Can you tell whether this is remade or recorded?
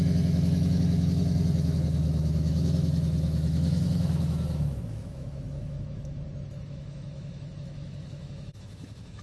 remade